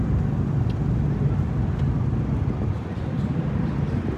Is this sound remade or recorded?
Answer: recorded